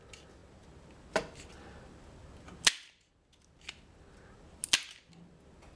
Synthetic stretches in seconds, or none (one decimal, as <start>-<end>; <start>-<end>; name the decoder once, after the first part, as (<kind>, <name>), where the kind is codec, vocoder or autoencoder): none